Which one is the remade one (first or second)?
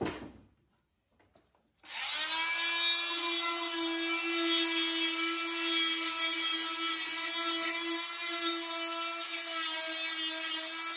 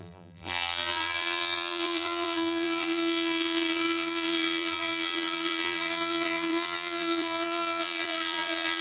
second